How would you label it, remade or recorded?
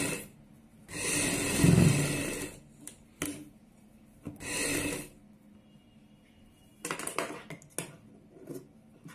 recorded